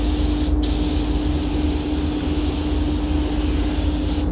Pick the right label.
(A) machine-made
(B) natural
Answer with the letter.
B